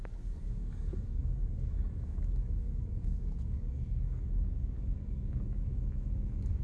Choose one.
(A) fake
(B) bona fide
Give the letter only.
A